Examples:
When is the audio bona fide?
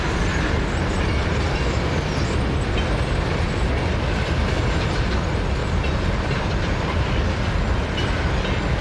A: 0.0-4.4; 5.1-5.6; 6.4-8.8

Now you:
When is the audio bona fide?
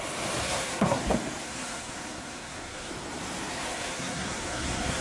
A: 0.0-0.4; 1.0-1.4; 2.9-3.5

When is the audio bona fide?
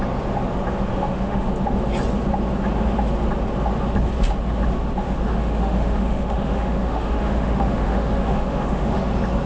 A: 0.0-0.9; 1.5-5.0; 9.0-9.5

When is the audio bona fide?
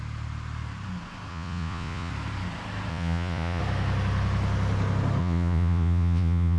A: 0.0-1.3; 2.1-2.9; 3.6-5.2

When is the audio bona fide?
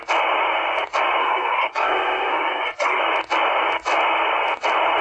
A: 0.0-1.2; 3.0-5.0